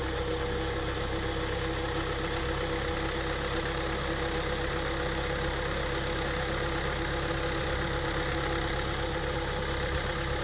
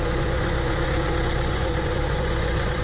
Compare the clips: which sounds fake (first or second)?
second